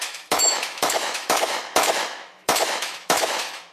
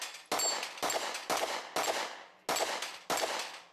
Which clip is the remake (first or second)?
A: first